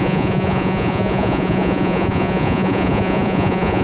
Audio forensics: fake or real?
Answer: fake